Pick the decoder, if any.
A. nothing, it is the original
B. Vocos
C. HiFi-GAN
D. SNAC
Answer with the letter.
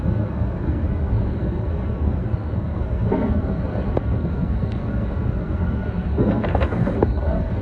D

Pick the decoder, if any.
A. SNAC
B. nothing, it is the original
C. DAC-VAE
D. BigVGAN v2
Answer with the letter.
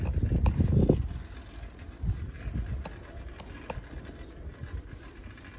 B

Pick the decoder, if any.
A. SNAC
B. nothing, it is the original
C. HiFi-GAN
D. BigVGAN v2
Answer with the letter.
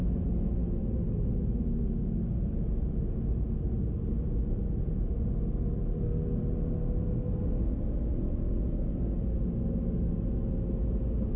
B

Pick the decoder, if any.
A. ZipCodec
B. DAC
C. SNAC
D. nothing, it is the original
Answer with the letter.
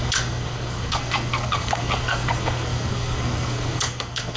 C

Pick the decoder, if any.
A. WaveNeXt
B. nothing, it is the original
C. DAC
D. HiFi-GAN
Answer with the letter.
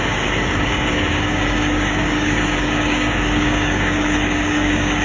C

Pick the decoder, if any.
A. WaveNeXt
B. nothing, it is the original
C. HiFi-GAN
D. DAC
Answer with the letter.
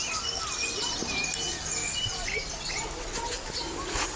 B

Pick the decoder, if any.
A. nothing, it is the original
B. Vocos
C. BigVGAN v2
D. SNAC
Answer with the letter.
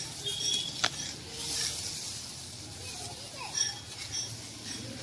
A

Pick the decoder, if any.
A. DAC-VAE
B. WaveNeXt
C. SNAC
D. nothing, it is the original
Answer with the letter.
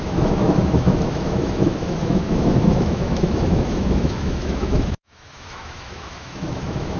A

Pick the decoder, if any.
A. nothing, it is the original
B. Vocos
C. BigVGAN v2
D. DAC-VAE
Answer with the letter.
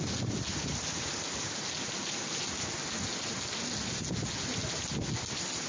A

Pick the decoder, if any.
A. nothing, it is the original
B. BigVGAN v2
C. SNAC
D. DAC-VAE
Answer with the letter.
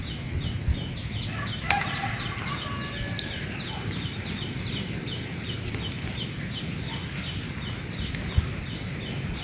A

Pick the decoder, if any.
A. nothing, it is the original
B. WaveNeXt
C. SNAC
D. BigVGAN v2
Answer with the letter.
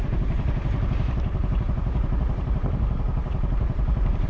D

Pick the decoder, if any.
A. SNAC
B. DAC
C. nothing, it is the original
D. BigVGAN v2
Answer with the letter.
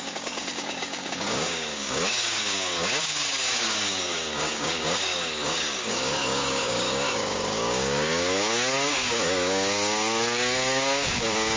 B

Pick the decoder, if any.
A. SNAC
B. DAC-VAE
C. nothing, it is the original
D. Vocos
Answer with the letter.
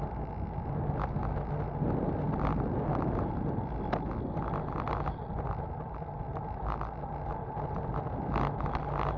C